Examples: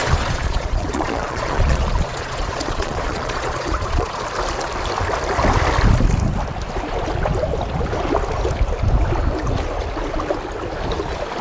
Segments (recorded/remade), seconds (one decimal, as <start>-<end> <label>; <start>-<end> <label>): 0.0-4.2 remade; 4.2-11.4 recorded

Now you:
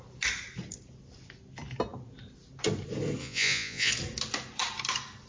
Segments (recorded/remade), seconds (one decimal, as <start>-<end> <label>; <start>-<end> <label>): 0.0-3.2 recorded; 3.2-3.9 remade; 3.9-5.3 recorded

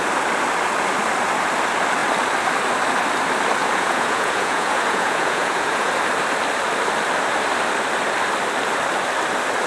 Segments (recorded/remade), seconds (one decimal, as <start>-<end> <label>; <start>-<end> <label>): 0.0-3.6 recorded; 3.6-5.9 remade; 5.9-9.7 recorded

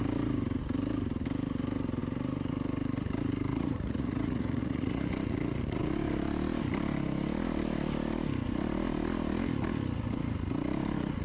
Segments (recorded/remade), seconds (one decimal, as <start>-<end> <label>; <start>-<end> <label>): 0.0-3.5 recorded; 3.5-5.1 remade; 5.1-11.2 recorded

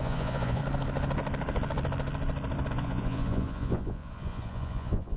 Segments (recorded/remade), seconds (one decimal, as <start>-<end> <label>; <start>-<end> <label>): 0.0-0.6 remade; 0.6-2.7 recorded; 2.7-5.2 remade